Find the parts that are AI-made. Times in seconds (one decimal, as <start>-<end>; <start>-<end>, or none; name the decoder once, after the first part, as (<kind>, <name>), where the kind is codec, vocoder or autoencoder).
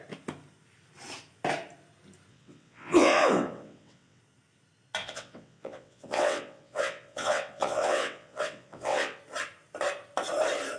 2.3-4.2 (vocoder, WaveNeXt); 5.0-9.2